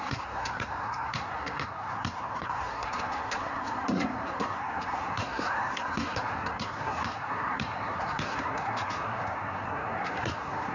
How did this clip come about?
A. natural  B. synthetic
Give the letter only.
B